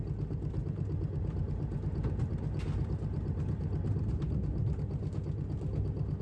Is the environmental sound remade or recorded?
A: recorded